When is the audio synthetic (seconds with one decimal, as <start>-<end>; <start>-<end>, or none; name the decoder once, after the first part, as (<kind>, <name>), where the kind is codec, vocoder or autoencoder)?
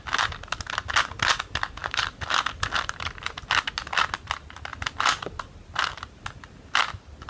1.8-3.4 (vocoder, BigVGAN v2)